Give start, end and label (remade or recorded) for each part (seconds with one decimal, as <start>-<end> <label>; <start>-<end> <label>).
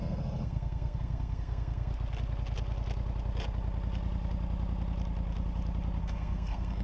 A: 0.0-1.9 remade; 1.9-6.0 recorded; 6.0-6.8 remade